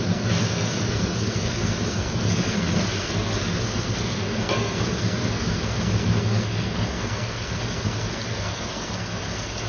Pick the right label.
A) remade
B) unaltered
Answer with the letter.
A